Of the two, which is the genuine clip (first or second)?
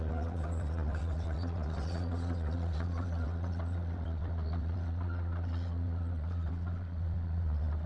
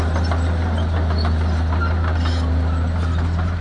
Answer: second